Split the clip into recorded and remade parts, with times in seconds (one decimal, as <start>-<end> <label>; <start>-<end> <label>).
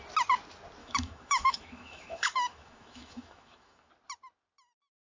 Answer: 0.0-0.8 recorded; 0.8-3.9 remade; 3.9-5.1 recorded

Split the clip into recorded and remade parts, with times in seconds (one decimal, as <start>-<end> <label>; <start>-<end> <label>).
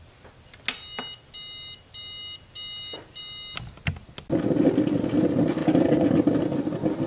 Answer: 0.0-7.1 recorded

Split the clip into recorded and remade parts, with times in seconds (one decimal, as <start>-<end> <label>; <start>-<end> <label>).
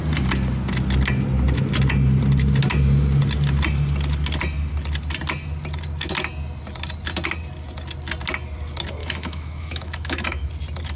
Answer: 0.0-9.0 recorded; 9.0-10.5 remade; 10.5-11.0 recorded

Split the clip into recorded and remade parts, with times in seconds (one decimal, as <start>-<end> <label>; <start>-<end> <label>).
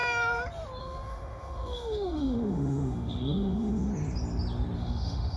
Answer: 0.0-0.8 recorded; 0.8-3.9 remade; 3.9-4.8 recorded; 4.8-5.4 remade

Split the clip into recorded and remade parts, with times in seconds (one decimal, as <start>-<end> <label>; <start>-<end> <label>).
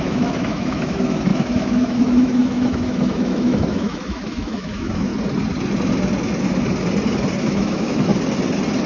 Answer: 0.0-5.1 remade; 5.1-7.4 recorded; 7.4-8.1 remade; 8.1-8.9 recorded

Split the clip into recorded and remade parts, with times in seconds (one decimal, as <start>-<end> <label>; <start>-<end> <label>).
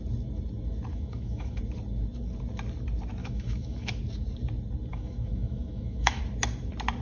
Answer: 0.0-0.9 recorded; 0.9-1.6 remade; 1.6-3.2 recorded; 3.2-4.0 remade; 4.0-4.9 recorded; 4.9-6.2 remade; 6.2-7.0 recorded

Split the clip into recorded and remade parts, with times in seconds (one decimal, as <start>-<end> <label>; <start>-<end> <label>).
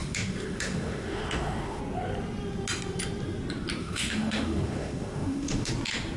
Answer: 0.0-1.8 remade; 1.8-3.8 recorded; 3.8-5.7 remade; 5.7-6.2 recorded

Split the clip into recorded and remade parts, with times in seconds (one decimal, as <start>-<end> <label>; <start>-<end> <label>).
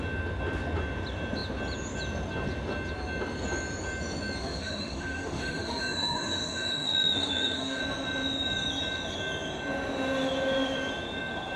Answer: 0.0-4.4 recorded; 4.4-7.8 remade; 7.8-11.6 recorded